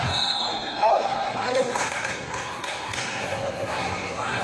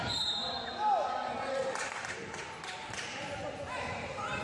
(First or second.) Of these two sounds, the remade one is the first